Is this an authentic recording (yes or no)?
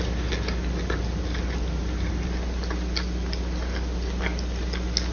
yes